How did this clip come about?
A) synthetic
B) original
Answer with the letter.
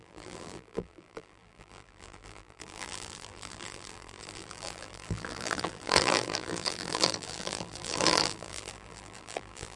A